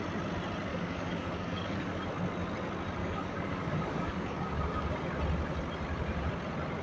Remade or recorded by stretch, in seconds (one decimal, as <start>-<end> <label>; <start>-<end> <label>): 0.0-0.7 recorded; 0.7-2.0 remade; 2.0-3.0 recorded; 3.0-4.9 remade; 4.9-6.8 recorded